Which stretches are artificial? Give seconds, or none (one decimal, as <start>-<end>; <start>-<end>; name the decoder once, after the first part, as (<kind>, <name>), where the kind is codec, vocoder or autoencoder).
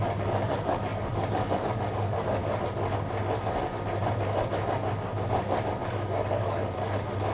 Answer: 0.0-2.4 (codec, DAC); 5.8-7.3